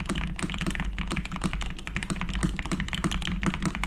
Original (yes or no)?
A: no